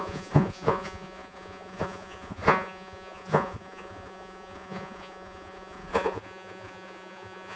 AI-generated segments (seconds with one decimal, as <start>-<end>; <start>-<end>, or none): 0.0-7.6